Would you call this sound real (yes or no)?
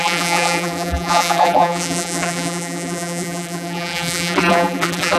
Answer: no